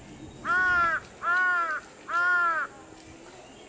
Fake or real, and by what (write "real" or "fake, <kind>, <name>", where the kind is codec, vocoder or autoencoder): real